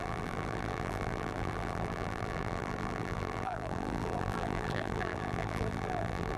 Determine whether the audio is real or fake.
fake